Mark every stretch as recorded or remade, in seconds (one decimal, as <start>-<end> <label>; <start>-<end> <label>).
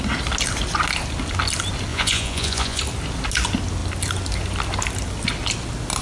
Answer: 0.0-1.9 recorded; 1.9-2.8 remade; 2.8-6.0 recorded